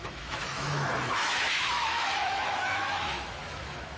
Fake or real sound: fake